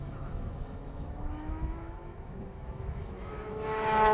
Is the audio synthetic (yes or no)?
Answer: yes